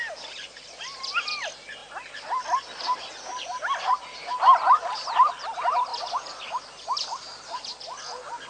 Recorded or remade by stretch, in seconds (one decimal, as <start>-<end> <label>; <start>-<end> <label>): 0.0-8.5 recorded